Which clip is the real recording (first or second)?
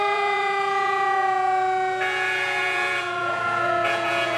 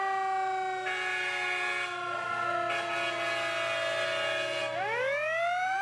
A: second